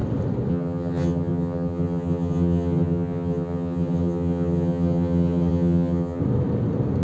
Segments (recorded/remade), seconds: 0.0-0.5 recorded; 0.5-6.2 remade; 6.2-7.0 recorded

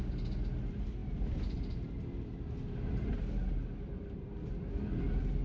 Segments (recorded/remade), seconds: 0.0-5.4 recorded

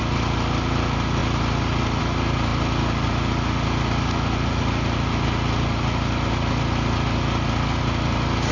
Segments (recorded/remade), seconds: 0.0-8.5 recorded

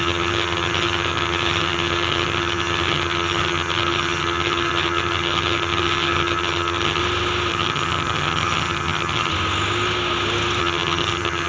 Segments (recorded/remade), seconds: 0.0-7.0 remade; 7.0-7.5 recorded; 7.5-9.3 remade; 9.3-10.6 recorded; 10.6-11.5 remade